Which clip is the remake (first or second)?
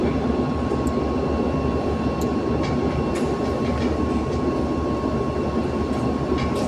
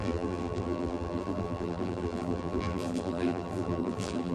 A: second